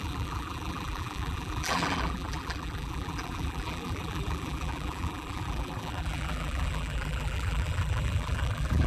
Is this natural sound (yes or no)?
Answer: no